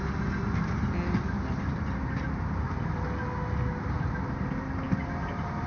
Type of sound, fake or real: real